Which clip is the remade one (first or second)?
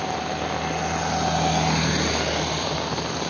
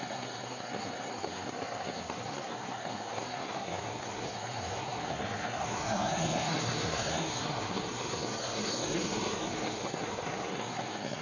second